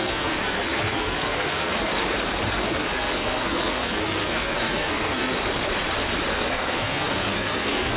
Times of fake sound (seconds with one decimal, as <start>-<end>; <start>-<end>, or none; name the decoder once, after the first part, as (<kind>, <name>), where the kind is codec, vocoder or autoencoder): 0.0-1.9 (codec, SNAC); 2.5-5.4; 6.3-8.0